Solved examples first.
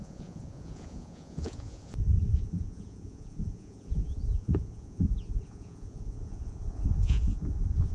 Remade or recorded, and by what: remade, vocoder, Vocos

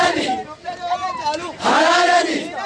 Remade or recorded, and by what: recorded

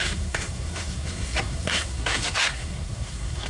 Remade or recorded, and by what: remade, codec, SNAC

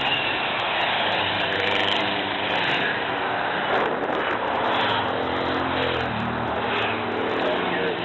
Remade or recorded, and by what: recorded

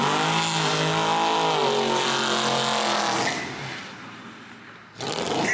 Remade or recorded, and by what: recorded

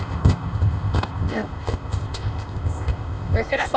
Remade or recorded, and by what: remade, codec, ZipCodec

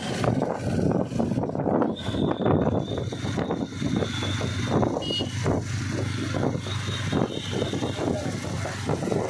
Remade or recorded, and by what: recorded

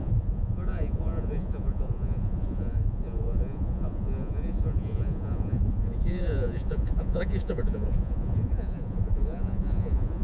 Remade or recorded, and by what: remade, vocoder, Vocos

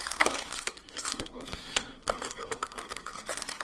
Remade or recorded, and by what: remade, codec, SNAC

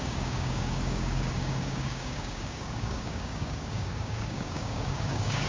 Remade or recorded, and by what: remade, codec, DAC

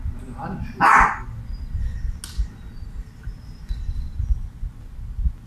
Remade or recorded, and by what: recorded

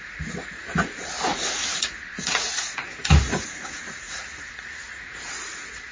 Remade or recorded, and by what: remade, vocoder, Vocos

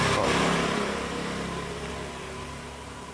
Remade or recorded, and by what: recorded